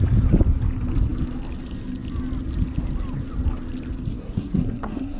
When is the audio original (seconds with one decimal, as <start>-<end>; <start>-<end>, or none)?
0.0-4.1